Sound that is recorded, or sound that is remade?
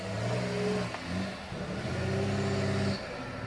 recorded